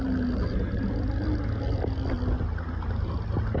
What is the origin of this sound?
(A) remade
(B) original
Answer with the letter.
B